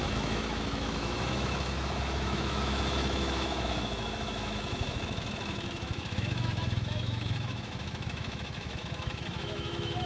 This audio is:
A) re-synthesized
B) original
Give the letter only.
A